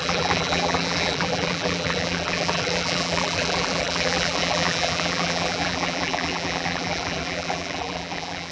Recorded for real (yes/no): no